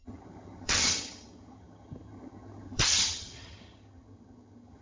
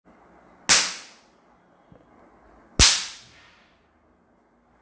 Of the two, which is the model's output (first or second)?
first